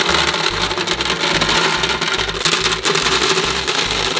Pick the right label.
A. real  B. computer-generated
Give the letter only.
A